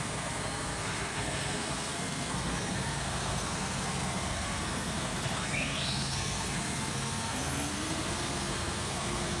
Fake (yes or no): yes